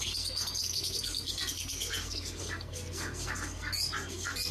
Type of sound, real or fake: fake